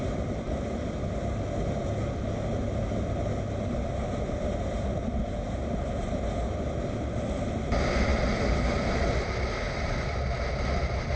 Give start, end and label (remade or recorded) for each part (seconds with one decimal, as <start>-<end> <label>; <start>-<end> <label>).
0.0-11.2 recorded